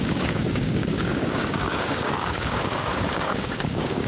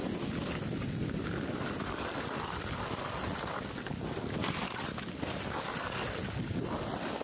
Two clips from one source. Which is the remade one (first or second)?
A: first